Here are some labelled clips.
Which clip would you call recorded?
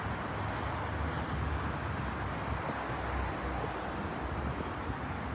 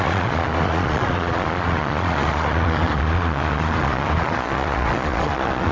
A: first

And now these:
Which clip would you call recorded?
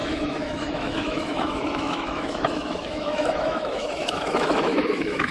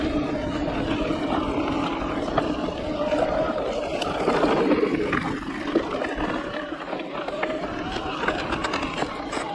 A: second